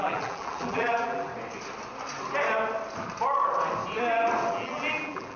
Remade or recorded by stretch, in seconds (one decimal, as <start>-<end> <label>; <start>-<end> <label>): 0.0-1.3 remade; 1.3-4.5 recorded; 4.5-5.4 remade